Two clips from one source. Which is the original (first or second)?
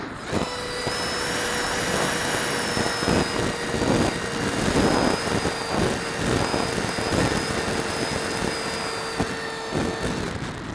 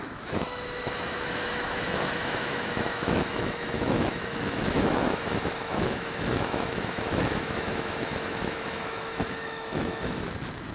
first